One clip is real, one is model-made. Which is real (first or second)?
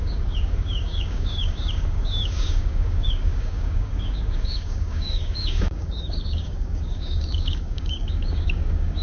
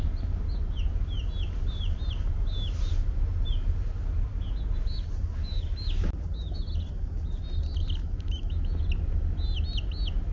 second